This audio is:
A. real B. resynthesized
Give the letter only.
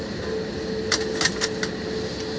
A